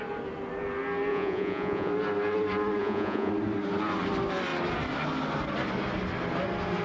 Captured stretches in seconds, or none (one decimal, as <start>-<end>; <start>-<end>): 0.0-1.1; 1.9-2.8; 3.3-6.8